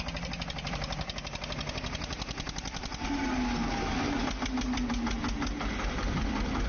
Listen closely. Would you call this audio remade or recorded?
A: recorded